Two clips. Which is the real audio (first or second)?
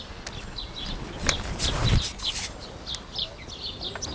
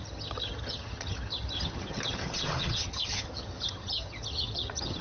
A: first